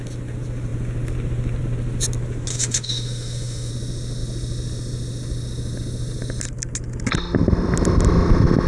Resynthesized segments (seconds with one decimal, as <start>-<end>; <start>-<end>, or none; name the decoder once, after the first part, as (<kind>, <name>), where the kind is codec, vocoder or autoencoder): 2.5-3.7 (autoencoder, DAC-VAE)